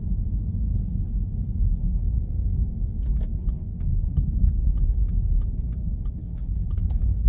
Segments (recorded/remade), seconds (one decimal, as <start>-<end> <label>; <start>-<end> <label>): 0.0-0.7 recorded; 0.7-1.5 remade; 1.5-3.9 recorded; 3.9-4.7 remade; 4.7-6.2 recorded; 6.2-7.3 remade